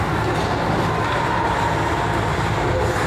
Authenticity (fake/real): real